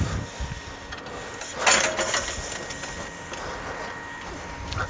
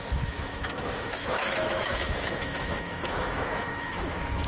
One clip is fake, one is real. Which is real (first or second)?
first